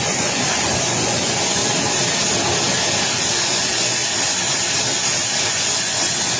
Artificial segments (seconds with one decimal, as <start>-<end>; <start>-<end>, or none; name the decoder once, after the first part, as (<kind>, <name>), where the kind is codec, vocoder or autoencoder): 0.0-1.6 (vocoder, Vocos); 3.3-4.0; 5.5-6.4